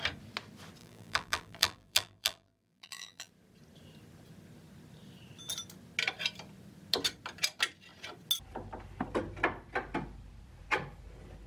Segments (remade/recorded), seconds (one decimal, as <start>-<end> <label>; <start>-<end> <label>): 0.0-0.8 recorded; 0.8-3.3 remade; 3.3-11.5 recorded